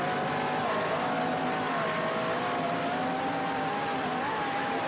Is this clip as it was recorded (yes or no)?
no